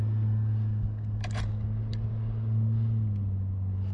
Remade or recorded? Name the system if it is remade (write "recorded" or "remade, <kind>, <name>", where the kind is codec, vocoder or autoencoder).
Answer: recorded